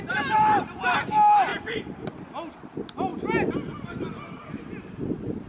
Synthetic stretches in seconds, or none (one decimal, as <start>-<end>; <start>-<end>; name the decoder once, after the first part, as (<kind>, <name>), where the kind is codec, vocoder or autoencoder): none